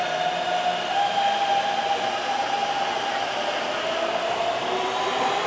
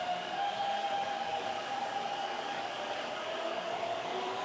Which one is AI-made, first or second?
second